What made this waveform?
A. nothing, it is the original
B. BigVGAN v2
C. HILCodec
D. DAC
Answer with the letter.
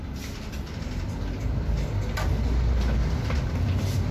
A